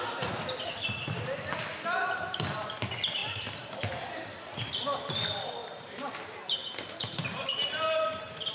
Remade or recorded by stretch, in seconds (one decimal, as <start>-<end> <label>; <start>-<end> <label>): 0.0-3.2 recorded; 3.2-4.4 remade; 4.4-5.6 recorded; 5.6-6.1 remade; 6.1-6.6 recorded; 6.6-8.5 remade